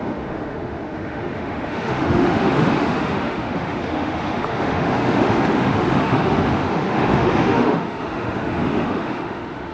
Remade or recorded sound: remade